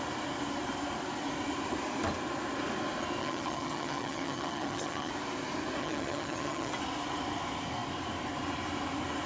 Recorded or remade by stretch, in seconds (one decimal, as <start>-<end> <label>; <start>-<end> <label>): 0.0-3.2 recorded; 3.2-5.1 remade; 5.1-5.8 recorded; 5.8-6.7 remade; 6.7-9.3 recorded